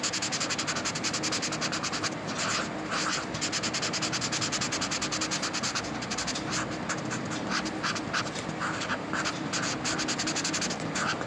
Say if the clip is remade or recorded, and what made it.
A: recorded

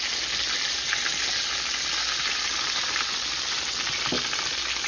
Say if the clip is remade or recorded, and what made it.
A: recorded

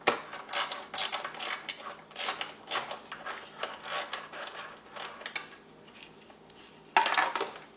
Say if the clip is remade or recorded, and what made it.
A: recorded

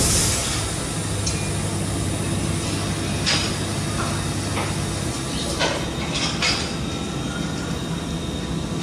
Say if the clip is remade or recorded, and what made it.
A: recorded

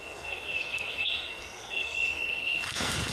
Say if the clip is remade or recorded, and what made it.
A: remade, codec, SNAC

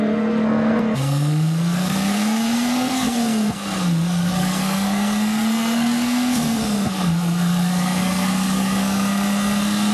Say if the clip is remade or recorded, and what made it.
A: remade, codec, SNAC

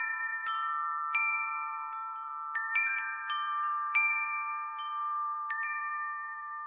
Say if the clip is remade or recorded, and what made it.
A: remade, vocoder, BigVGAN v2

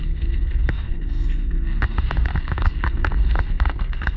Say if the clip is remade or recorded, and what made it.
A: remade, codec, SNAC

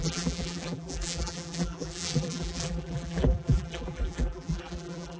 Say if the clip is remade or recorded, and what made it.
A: remade, vocoder, BigVGAN v2